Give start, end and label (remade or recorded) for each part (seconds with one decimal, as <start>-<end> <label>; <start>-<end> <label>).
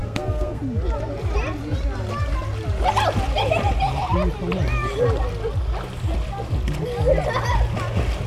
0.0-0.6 remade; 0.6-8.3 recorded